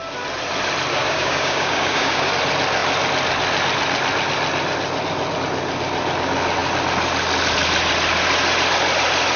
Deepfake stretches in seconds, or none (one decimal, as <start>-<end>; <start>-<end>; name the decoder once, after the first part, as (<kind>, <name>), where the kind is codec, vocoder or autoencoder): 0.9-2.3 (codec, DAC)